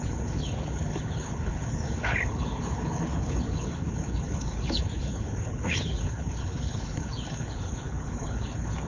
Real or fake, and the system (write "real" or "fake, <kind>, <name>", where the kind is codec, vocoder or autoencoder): fake, codec, HILCodec